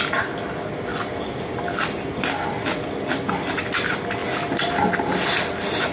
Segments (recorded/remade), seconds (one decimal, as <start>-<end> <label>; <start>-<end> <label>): 0.0-5.9 recorded